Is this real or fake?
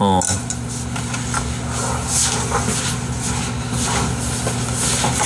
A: real